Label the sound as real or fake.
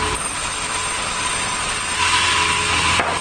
real